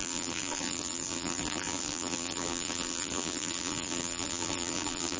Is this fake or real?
fake